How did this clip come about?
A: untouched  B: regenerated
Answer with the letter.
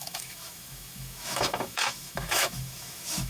B